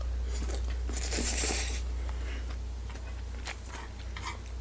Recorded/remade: recorded